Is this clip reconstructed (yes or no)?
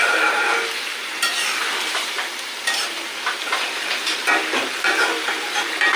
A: yes